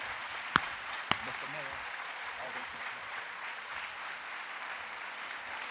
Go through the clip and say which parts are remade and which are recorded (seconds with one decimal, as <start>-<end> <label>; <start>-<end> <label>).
0.0-1.2 remade; 1.2-1.8 recorded; 1.8-3.7 remade; 3.7-5.7 recorded